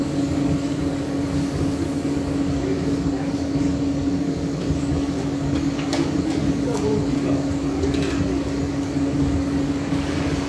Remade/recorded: remade